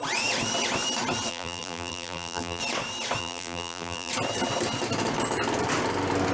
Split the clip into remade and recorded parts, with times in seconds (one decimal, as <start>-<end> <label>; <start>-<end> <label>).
0.0-1.3 recorded; 1.3-2.6 remade; 2.6-3.2 recorded; 3.2-4.1 remade; 4.1-6.3 recorded